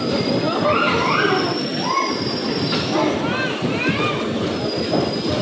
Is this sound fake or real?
real